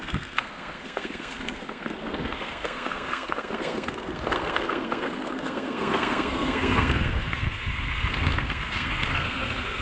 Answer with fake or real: fake